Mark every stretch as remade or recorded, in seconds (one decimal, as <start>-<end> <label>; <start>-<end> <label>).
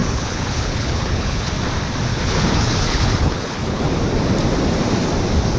0.0-1.5 remade; 1.5-2.1 recorded; 2.1-3.8 remade; 3.8-5.6 recorded